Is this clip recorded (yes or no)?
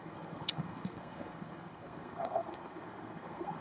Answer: no